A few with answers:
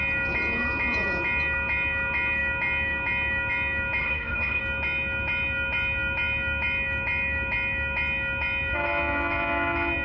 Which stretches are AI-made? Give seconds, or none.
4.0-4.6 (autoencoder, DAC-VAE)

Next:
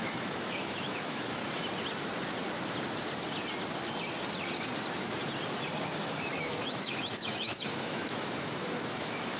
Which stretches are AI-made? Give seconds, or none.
0.0-1.4 (autoencoder, DAC-VAE); 5.9-9.4